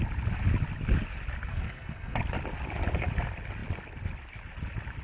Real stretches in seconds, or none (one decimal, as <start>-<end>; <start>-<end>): 0.0-1.5; 2.2-5.0